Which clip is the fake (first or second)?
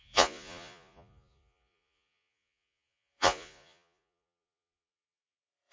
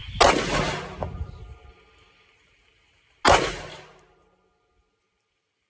first